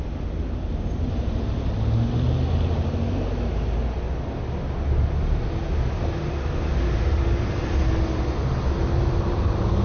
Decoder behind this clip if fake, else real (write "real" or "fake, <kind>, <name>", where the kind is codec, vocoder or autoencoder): real